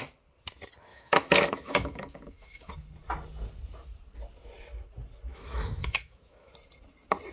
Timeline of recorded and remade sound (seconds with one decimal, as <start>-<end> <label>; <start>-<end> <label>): 0.0-0.9 recorded; 0.9-2.7 remade; 2.7-5.3 recorded; 5.3-6.5 remade; 6.5-7.3 recorded